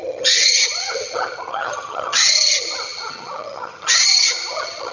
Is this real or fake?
fake